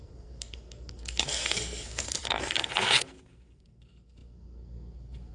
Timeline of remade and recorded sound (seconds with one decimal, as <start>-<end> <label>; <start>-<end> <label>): 0.0-5.3 remade